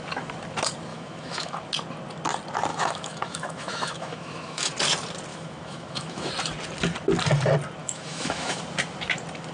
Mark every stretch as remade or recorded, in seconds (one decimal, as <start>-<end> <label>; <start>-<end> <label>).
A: 0.0-0.9 recorded; 0.9-1.6 remade; 1.6-2.7 recorded; 2.7-4.7 remade; 4.7-5.3 recorded; 5.3-6.3 remade; 6.3-7.8 recorded; 7.8-8.6 remade; 8.6-9.5 recorded